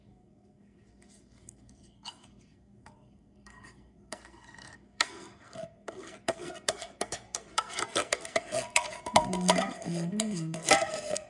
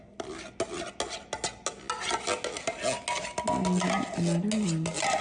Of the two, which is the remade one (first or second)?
first